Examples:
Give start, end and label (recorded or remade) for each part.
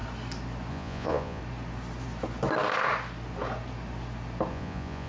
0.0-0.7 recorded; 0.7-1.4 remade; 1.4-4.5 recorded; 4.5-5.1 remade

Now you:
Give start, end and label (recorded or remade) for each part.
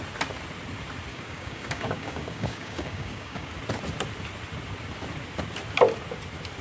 0.0-1.1 recorded; 1.1-3.5 remade; 3.5-6.6 recorded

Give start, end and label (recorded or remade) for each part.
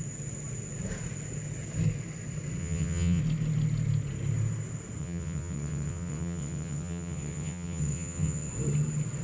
0.0-2.6 recorded; 2.6-3.2 remade; 3.2-5.0 recorded; 5.0-8.5 remade; 8.5-9.2 recorded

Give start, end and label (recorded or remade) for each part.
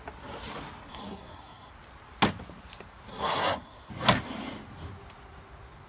0.0-0.9 recorded; 0.9-1.7 remade; 1.7-3.1 recorded; 3.1-3.9 remade; 3.9-5.9 recorded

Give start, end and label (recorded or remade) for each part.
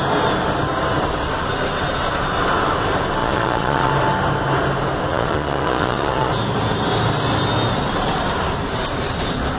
0.0-3.2 recorded; 3.2-3.9 remade; 3.9-5.1 recorded; 5.1-6.3 remade; 6.3-9.6 recorded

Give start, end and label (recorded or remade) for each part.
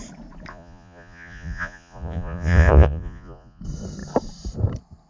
0.0-0.5 recorded; 0.5-3.6 remade; 3.6-5.1 recorded